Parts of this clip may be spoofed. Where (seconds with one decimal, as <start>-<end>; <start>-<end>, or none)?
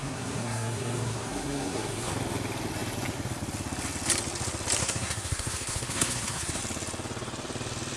0.0-2.1; 4.8-6.6